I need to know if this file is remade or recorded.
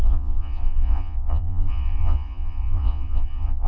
remade